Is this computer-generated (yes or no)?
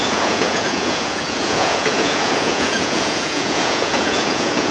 yes